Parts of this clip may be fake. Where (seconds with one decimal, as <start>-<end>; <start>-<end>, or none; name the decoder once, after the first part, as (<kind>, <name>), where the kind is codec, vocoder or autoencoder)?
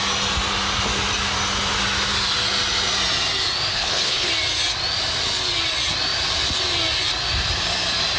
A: 3.7-4.3 (codec, HILCodec)